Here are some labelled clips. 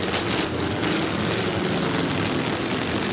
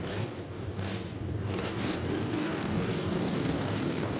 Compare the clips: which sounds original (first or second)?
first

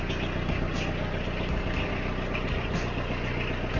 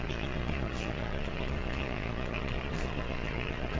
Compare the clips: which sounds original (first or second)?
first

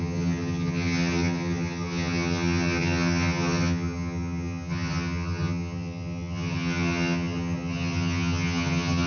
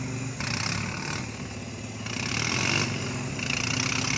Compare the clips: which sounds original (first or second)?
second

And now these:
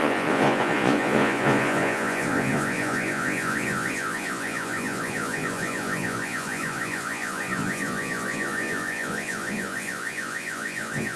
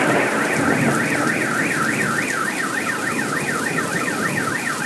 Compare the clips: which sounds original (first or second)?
second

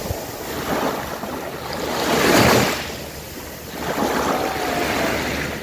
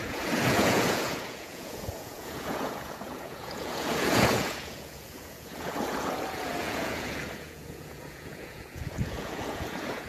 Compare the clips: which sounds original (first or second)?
first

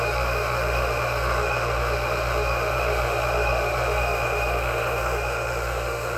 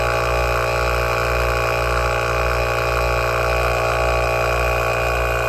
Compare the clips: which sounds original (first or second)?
second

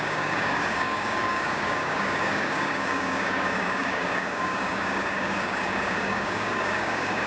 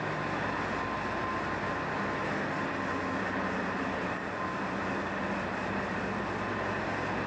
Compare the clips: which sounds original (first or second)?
second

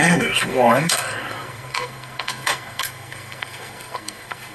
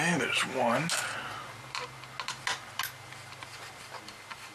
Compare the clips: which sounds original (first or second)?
second